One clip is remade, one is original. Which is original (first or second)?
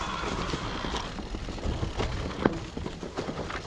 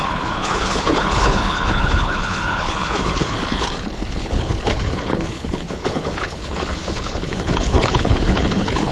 first